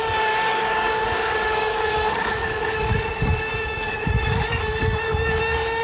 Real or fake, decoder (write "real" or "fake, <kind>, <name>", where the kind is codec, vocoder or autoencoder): fake, codec, DAC